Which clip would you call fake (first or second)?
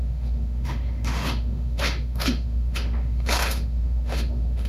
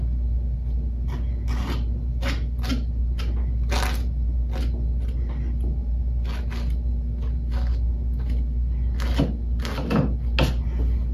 first